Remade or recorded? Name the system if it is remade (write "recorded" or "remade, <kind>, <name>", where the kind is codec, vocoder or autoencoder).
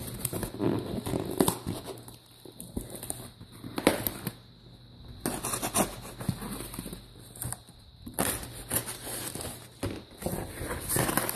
recorded